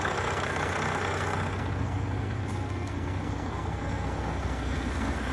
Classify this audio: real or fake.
fake